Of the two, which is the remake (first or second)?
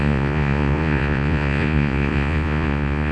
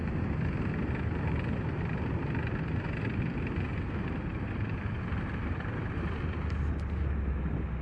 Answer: first